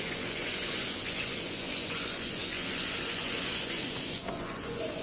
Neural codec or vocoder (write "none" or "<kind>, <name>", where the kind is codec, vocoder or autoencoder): vocoder, Vocos